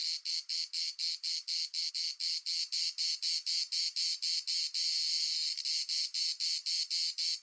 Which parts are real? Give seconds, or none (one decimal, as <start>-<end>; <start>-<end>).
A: 0.0-7.4